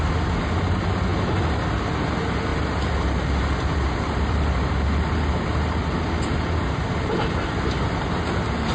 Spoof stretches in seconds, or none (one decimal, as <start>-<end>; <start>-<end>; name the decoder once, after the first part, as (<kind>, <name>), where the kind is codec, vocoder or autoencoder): 2.5-4.7 (vocoder, BigVGAN v2)